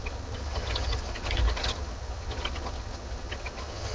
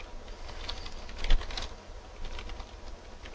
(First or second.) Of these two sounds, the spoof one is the first